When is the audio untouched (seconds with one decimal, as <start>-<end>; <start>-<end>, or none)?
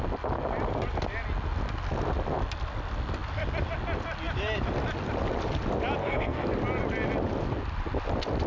0.0-6.0; 6.5-8.5